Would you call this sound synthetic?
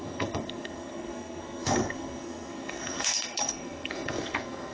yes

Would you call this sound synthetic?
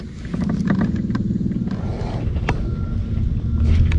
no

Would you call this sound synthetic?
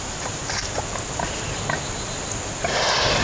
no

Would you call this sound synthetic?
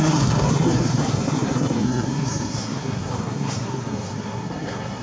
yes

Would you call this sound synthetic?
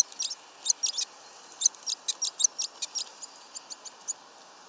no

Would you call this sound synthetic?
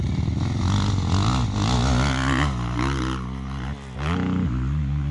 no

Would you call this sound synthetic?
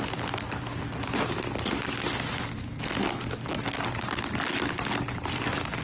no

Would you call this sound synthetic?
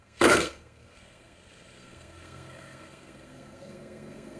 yes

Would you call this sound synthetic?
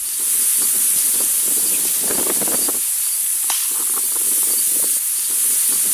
no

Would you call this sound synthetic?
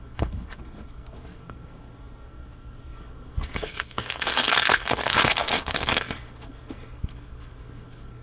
yes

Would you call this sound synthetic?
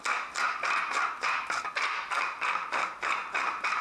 no